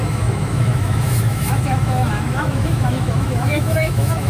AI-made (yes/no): yes